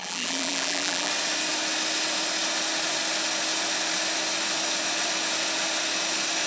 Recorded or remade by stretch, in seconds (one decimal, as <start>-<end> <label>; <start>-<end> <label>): 0.0-1.1 remade; 1.1-6.5 recorded